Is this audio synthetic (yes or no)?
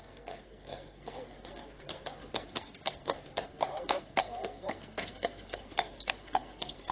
yes